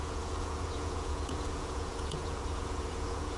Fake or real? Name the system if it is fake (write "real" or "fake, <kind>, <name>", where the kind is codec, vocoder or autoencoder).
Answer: fake, vocoder, Vocos